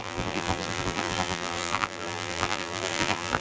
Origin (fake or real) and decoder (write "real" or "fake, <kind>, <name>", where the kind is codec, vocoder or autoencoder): fake, vocoder, BigVGAN v2